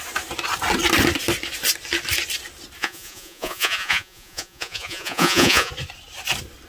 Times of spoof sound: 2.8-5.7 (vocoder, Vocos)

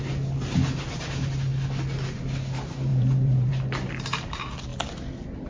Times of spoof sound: 2.9-3.5 (vocoder, Vocos)

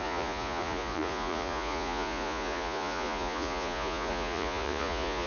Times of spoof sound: 0.0-5.3 (vocoder, Vocos)

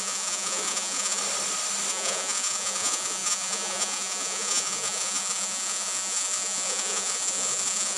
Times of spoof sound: 0.0-1.2 (vocoder, Vocos); 1.9-8.0

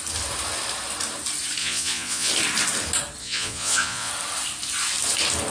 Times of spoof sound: 1.6-2.3 (vocoder, Vocos); 3.2-4.1